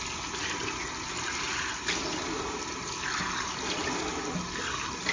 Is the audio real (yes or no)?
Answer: yes